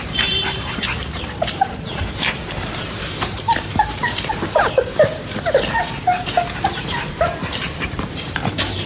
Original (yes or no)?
no